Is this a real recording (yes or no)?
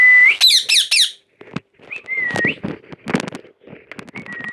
yes